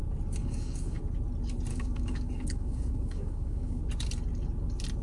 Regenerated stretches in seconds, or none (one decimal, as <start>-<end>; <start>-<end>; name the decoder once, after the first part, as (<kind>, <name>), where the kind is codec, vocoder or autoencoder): 0.4-1.0 (codec, DAC); 1.7-3.8